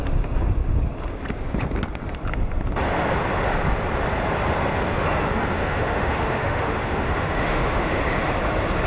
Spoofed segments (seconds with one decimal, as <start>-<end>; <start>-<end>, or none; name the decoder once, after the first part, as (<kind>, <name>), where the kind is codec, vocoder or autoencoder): 5.6-8.0 (autoencoder, DAC-VAE)